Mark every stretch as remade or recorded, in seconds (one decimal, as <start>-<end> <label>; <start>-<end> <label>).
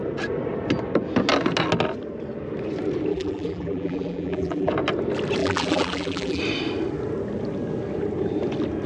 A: 0.0-3.1 recorded; 3.1-4.7 remade; 4.7-5.4 recorded; 5.4-6.4 remade; 6.4-8.9 recorded